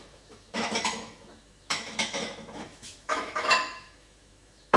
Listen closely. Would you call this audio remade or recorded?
remade